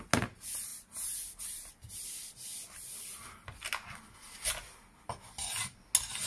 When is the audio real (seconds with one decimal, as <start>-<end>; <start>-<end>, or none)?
0.0-6.3

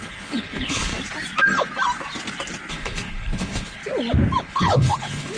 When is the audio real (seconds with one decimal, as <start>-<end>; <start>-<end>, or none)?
0.9-2.7; 3.8-4.4

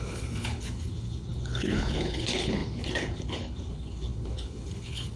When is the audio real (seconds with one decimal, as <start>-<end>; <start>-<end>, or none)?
none